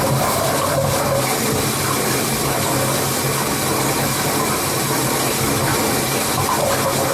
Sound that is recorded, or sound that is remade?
recorded